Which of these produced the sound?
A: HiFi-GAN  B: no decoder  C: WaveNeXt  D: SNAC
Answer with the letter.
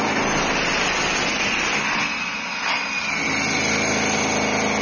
B